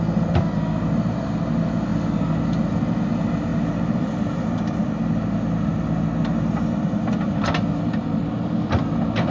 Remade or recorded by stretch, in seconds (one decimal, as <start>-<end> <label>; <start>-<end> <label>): 0.0-9.3 recorded